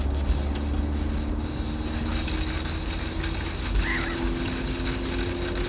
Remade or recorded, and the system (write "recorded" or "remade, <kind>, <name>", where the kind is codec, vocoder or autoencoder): recorded